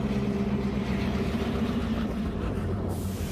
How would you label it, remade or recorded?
remade